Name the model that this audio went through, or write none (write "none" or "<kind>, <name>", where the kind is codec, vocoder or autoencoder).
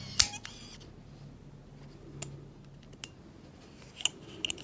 none